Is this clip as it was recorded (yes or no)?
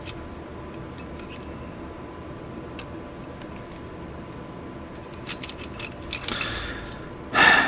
yes